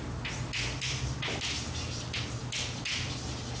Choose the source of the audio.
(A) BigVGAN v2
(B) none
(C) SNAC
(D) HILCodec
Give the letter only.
B